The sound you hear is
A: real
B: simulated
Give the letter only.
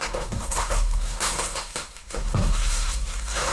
B